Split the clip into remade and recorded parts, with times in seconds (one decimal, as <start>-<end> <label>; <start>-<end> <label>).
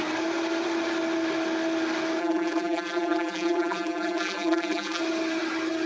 0.0-2.2 recorded; 2.2-5.0 remade; 5.0-5.9 recorded